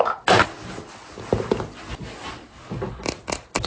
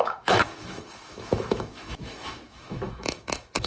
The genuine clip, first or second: first